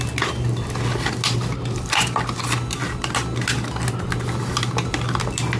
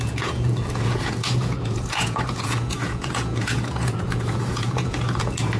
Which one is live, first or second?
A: first